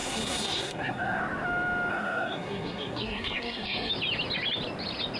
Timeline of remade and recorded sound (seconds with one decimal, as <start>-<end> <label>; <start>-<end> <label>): 0.0-1.2 remade; 1.2-1.9 recorded; 1.9-3.9 remade; 3.9-5.2 recorded